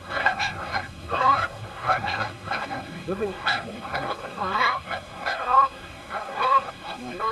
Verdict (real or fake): fake